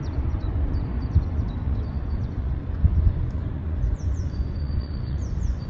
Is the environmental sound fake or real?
fake